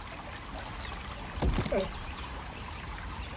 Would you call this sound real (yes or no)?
yes